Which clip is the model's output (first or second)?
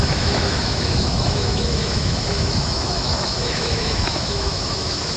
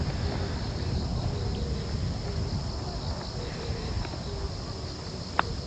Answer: first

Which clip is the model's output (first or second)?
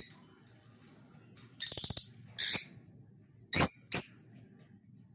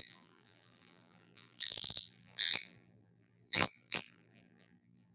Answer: second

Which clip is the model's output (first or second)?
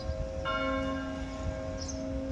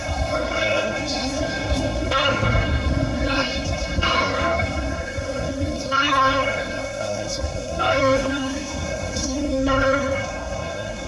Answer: second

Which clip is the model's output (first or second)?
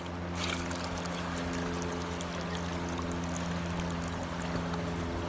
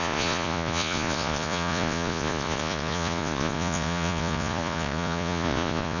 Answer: second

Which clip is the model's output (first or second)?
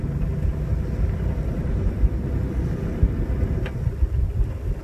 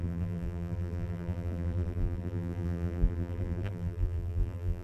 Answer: second